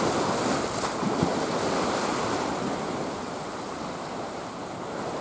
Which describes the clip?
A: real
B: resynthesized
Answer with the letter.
A